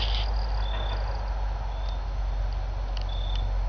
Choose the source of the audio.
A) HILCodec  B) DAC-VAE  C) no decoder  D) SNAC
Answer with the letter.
C